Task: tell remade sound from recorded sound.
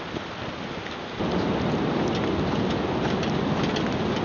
recorded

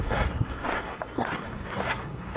remade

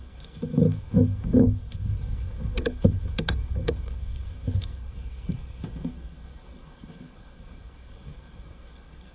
remade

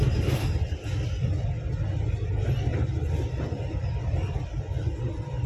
recorded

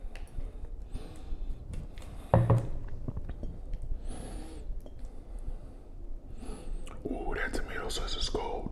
recorded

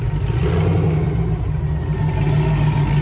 recorded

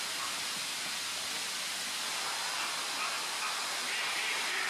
recorded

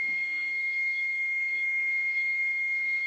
remade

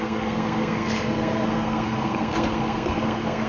remade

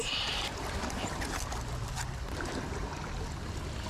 recorded